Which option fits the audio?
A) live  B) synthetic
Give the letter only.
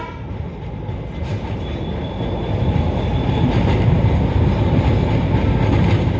A